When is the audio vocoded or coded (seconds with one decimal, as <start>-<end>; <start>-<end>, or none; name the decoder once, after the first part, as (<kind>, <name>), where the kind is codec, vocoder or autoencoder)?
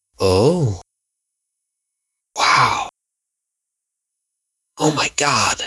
0.0-2.2 (autoencoder, DAC-VAE); 4.1-5.7